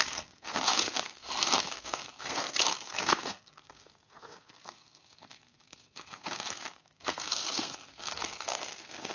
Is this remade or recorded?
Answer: remade